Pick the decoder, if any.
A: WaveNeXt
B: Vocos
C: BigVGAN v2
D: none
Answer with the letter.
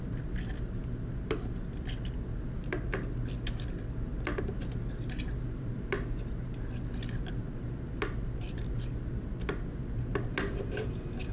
D